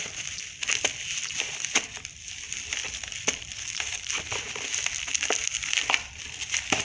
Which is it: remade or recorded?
remade